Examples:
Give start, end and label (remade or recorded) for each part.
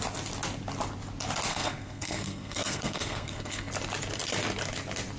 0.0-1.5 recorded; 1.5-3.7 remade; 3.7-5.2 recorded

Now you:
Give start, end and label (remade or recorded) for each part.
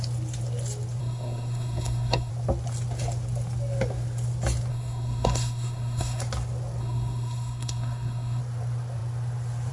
0.0-1.0 recorded; 1.0-2.3 remade; 2.3-4.7 recorded; 4.7-6.2 remade; 6.2-6.8 recorded; 6.8-8.4 remade; 8.4-9.7 recorded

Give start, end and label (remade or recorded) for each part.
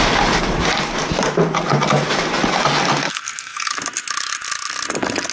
0.0-3.0 recorded; 3.0-3.7 remade; 3.7-5.3 recorded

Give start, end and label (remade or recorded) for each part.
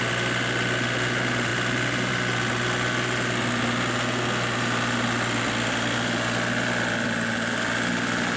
0.0-8.4 recorded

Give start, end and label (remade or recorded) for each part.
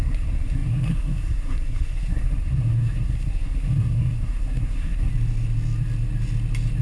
0.0-5.1 remade; 5.1-6.8 recorded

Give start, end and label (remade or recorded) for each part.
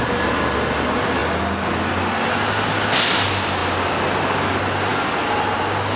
0.0-6.0 recorded